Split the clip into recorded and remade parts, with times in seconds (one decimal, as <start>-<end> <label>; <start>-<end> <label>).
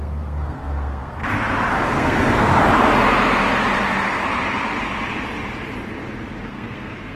0.0-1.2 remade; 1.2-1.7 recorded; 1.7-2.5 remade; 2.5-6.5 recorded; 6.5-7.2 remade